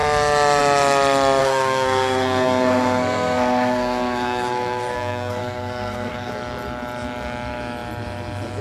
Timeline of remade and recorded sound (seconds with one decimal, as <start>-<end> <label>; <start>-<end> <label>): 0.0-1.4 recorded; 1.4-6.3 remade; 6.3-8.6 recorded